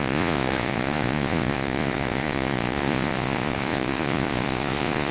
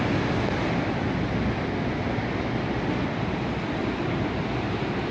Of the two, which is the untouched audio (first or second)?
second